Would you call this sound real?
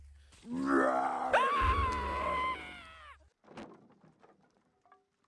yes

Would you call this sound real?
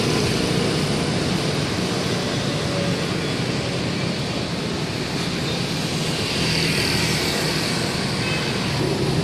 yes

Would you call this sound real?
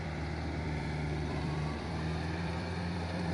no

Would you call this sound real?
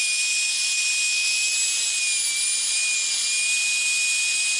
yes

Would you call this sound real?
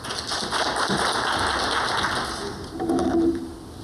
yes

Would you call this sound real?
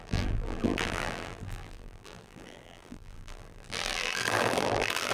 no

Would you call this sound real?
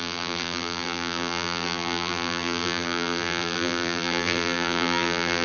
no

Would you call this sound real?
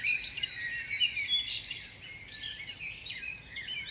no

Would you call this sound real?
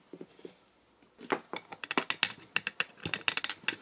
yes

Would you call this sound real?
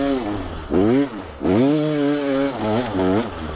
yes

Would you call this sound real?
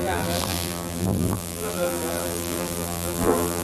no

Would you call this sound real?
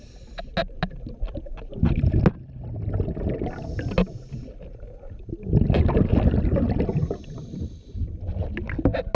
yes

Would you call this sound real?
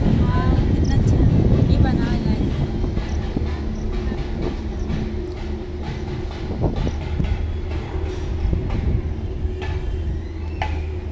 yes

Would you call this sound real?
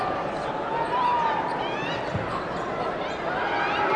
yes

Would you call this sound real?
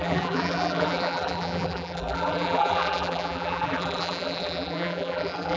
no